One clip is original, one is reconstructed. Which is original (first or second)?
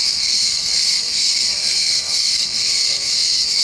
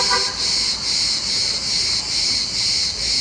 second